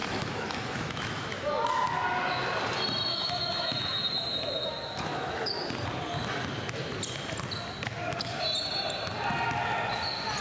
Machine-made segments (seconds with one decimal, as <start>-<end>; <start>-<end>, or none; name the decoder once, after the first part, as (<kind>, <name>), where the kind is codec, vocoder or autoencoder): 0.0-1.5 (autoencoder, DAC-VAE); 3.1-5.6